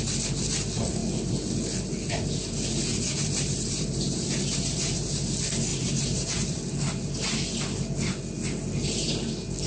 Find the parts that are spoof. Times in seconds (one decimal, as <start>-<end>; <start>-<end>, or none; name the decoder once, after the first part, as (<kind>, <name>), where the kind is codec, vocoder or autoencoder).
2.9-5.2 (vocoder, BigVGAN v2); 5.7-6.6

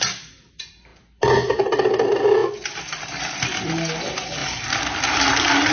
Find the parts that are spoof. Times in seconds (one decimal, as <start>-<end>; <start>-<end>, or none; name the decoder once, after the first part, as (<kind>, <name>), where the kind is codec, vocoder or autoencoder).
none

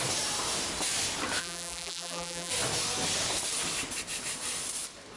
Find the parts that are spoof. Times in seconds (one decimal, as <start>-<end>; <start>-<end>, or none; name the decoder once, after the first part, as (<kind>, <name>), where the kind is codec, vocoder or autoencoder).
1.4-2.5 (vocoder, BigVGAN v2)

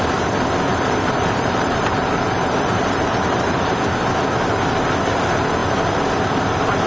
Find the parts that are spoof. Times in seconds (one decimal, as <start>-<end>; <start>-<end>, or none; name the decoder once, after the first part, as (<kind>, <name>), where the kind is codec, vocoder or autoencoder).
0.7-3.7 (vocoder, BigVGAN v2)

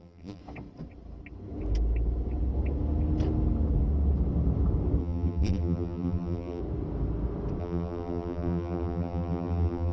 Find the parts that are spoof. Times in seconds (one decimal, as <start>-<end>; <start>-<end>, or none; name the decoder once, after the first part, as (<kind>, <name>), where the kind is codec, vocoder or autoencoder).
0.0-0.4 (vocoder, BigVGAN v2); 5.0-6.6; 7.6-9.9

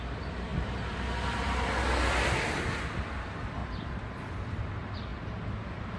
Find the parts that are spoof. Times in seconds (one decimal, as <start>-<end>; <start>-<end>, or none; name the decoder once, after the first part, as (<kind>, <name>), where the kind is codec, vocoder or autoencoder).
0.0-0.5 (vocoder, BigVGAN v2); 2.0-3.6; 4.2-6.0